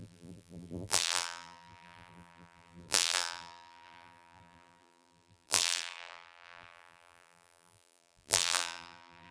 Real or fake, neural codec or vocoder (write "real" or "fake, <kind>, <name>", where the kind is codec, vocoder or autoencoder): fake, vocoder, BigVGAN v2